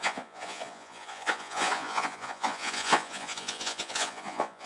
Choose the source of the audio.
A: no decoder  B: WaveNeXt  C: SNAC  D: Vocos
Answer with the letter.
D